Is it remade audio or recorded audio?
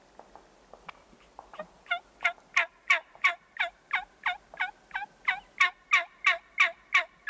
recorded